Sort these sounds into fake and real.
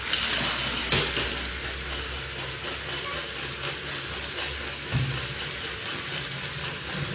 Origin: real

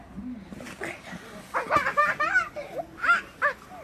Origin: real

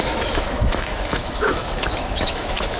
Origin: fake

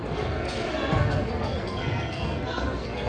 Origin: fake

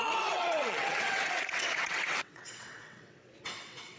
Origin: fake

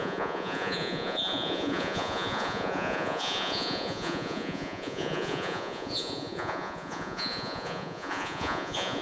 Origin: fake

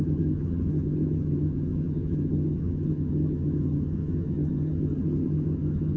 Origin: fake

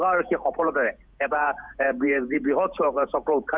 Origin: fake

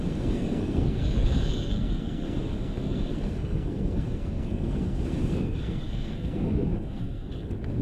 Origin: fake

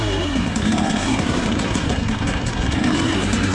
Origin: fake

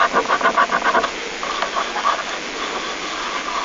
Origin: real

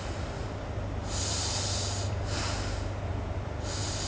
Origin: real